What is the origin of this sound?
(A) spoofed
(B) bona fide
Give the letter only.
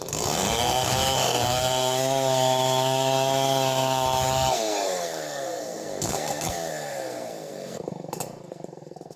A